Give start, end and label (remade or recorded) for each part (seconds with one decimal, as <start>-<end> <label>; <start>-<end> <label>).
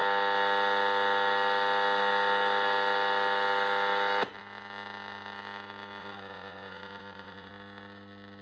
0.0-6.0 recorded; 6.0-7.5 remade; 7.5-8.4 recorded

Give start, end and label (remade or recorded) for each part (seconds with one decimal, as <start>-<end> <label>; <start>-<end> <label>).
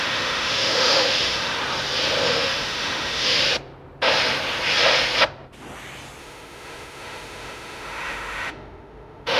0.0-1.6 remade; 1.6-2.2 recorded; 2.2-3.4 remade; 3.4-6.2 recorded; 6.2-9.4 remade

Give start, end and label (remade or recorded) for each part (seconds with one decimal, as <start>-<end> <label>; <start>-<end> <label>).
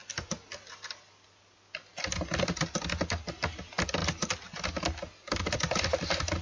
0.0-6.4 recorded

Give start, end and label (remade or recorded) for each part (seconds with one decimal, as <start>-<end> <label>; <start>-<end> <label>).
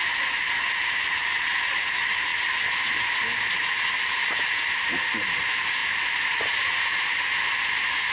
0.0-8.1 recorded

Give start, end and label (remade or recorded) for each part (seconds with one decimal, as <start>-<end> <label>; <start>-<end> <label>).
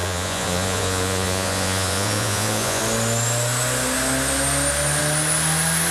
0.0-2.8 remade; 2.8-5.9 recorded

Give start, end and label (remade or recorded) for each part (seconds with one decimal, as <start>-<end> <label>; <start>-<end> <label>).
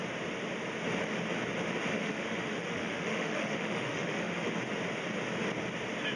0.0-1.9 recorded; 1.9-4.6 remade; 4.6-6.2 recorded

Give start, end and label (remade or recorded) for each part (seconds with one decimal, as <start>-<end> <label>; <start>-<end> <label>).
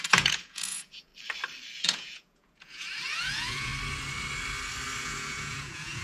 0.0-1.1 remade; 1.1-1.8 recorded; 1.8-3.7 remade; 3.7-5.0 recorded; 5.0-6.0 remade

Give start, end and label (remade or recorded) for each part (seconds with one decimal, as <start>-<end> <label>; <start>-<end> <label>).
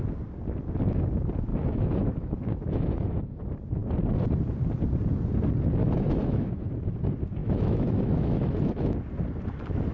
0.0-1.5 recorded; 1.5-3.4 remade; 3.4-5.8 recorded; 5.8-6.7 remade; 6.7-7.4 recorded; 7.4-8.9 remade; 8.9-9.9 recorded